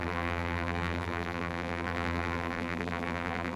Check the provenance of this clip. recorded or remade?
remade